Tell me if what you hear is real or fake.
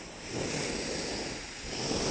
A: real